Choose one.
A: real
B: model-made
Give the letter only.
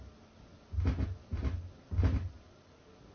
A